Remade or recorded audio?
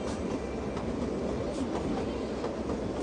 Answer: recorded